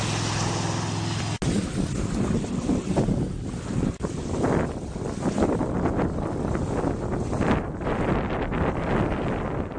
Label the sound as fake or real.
real